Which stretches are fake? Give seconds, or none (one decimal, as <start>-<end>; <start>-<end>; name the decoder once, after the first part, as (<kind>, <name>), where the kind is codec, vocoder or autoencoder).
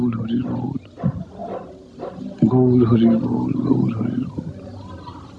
none